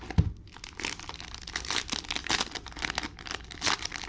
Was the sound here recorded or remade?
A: recorded